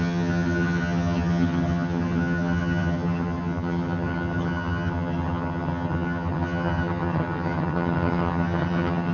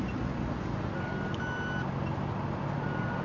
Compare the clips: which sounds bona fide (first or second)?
second